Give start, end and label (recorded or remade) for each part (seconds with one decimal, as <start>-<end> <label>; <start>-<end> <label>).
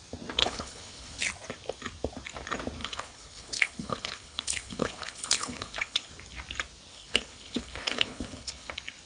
0.0-0.4 recorded; 0.4-1.2 remade; 1.2-2.8 recorded; 2.8-6.1 remade; 6.1-6.9 recorded; 6.9-8.7 remade; 8.7-9.1 recorded